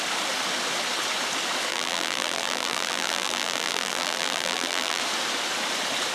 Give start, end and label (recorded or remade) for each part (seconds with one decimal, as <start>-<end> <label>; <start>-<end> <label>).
0.0-1.7 recorded; 1.7-5.0 remade; 5.0-6.1 recorded